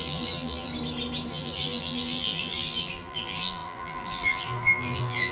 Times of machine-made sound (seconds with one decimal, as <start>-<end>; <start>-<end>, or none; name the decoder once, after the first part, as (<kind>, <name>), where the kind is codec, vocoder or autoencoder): 0.0-0.7 (vocoder, BigVGAN v2); 1.3-5.3